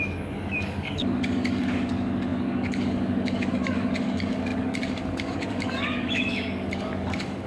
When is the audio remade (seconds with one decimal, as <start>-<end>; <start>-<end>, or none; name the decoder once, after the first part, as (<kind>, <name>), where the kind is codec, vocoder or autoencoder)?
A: 0.0-7.5 (codec, DAC)